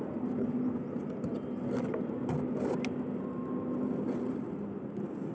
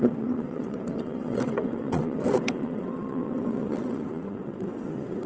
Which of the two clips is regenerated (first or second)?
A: second